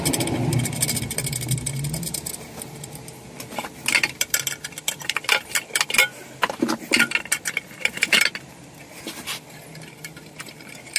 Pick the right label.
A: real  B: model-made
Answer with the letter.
A